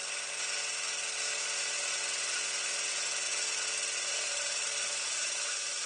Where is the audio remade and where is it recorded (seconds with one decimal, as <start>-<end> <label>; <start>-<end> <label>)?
0.0-2.9 recorded; 2.9-3.3 remade; 3.3-4.1 recorded; 4.1-5.9 remade